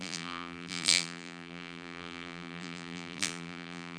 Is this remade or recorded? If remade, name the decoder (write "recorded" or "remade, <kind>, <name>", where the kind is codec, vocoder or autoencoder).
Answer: remade, vocoder, BigVGAN v2